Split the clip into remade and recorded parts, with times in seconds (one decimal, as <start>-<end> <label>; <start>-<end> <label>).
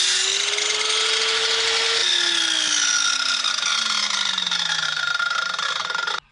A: 0.0-6.3 recorded